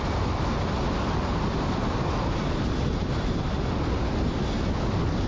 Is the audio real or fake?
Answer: real